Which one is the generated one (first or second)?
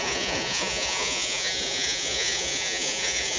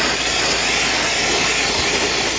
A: first